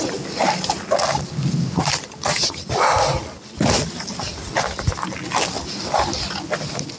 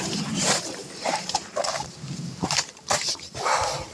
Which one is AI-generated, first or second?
second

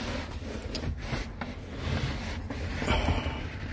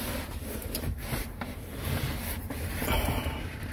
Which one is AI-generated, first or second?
second